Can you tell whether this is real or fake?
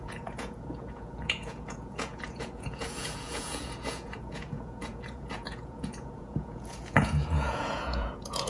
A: fake